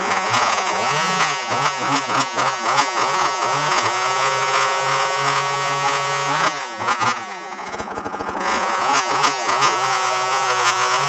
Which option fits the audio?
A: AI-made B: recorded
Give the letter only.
A